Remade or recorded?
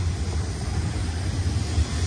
recorded